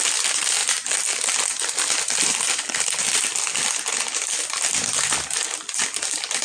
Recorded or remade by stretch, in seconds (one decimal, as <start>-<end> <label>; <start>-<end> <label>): 0.0-6.4 recorded